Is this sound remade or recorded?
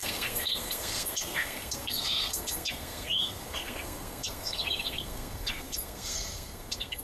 remade